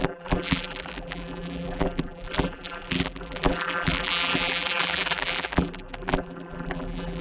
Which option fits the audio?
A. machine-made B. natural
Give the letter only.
A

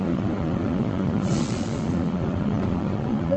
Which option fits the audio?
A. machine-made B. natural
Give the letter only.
A